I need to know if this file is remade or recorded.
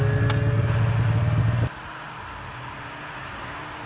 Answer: recorded